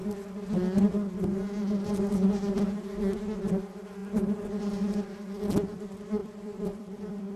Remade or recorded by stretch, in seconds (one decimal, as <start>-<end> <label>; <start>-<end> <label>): 0.0-6.2 recorded; 6.2-7.4 remade

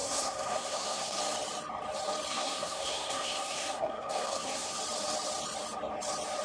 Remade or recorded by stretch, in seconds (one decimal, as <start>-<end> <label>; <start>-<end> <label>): 0.0-1.2 remade; 1.2-2.3 recorded; 2.3-4.8 remade; 4.8-6.4 recorded

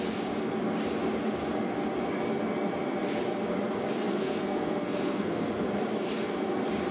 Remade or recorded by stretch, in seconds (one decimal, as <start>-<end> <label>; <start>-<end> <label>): 0.0-4.1 recorded; 4.1-5.5 remade; 5.5-6.9 recorded